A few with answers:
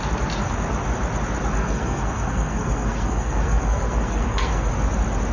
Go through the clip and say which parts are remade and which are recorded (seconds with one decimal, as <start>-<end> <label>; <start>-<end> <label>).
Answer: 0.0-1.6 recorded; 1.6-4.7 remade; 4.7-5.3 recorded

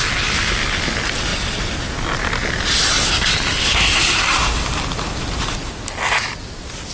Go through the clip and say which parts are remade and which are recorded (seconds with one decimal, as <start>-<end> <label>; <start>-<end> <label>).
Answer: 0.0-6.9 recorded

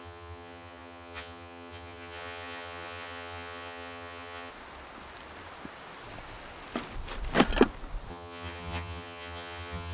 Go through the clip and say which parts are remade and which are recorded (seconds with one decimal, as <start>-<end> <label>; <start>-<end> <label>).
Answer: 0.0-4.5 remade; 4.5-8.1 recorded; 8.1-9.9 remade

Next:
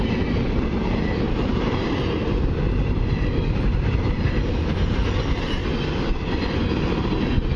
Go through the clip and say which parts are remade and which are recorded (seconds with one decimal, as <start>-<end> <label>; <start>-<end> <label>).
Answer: 0.0-5.6 remade; 5.6-7.6 recorded

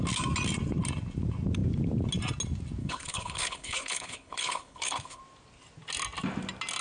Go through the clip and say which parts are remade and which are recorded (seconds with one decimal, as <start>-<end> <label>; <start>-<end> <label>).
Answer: 0.0-2.8 recorded; 2.8-5.2 remade; 5.2-6.8 recorded

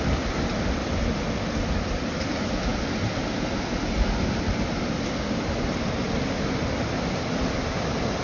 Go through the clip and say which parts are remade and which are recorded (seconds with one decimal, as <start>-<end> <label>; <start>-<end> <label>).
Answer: 0.0-8.2 recorded

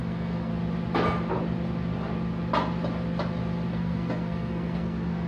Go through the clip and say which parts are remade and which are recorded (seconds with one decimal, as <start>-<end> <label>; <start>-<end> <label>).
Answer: 0.0-0.5 remade; 0.5-3.7 recorded; 3.7-5.3 remade

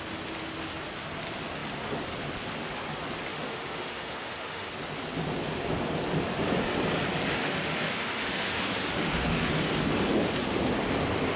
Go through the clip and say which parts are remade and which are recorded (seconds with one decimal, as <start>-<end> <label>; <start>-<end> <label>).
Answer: 0.0-3.3 recorded; 3.3-4.7 remade; 4.7-7.4 recorded; 7.4-9.5 remade; 9.5-11.4 recorded